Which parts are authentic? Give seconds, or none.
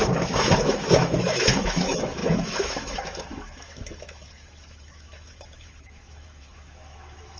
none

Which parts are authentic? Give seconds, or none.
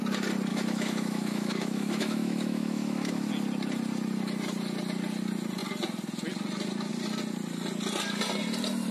0.0-0.5; 3.3-8.9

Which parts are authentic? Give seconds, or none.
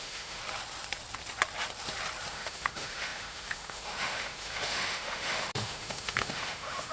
0.4-2.3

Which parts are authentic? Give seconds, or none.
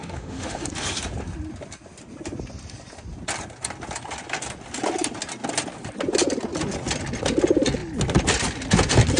0.7-9.2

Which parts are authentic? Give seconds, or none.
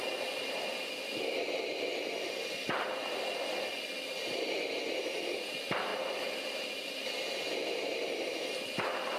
0.0-9.2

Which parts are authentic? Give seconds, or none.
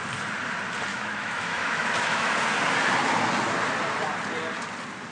0.0-0.9; 2.3-5.1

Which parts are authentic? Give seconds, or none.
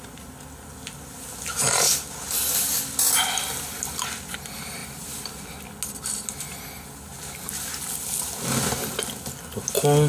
0.0-10.1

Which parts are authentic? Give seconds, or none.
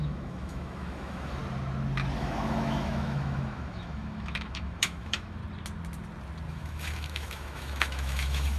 1.4-2.2; 5.4-6.5